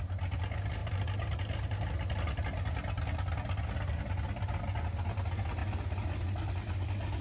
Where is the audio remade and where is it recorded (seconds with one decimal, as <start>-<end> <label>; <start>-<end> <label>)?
0.0-7.2 recorded